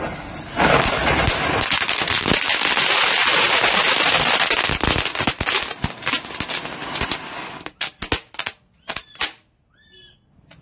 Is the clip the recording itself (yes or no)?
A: yes